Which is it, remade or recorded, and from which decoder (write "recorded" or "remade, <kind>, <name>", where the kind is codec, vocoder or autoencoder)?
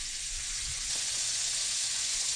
remade, vocoder, Vocos